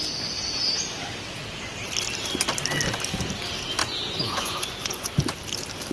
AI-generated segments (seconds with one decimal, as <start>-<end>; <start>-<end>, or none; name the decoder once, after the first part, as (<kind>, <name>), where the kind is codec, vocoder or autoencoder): 3.8-5.2 (vocoder, Vocos)